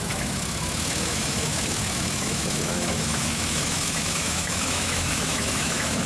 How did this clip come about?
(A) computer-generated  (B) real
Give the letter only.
A